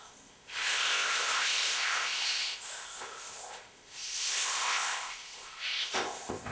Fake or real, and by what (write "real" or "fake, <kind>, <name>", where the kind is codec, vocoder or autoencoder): fake, codec, ZipCodec